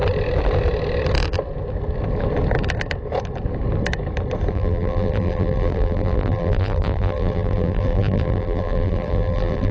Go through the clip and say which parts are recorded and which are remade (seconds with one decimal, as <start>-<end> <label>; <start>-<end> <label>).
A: 0.0-4.5 recorded; 4.5-9.7 remade